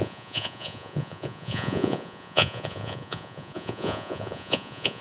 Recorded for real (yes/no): no